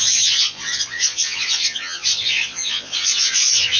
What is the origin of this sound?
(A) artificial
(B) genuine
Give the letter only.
A